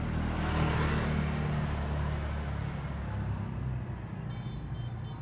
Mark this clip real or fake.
real